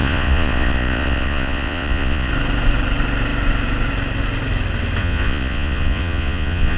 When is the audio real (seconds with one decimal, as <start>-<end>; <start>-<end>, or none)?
2.3-5.0